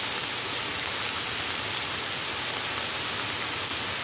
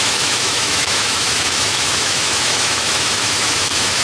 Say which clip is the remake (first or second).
second